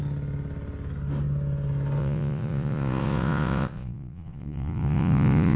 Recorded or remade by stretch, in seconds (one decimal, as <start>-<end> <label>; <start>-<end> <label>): 0.0-2.0 recorded; 2.0-5.6 remade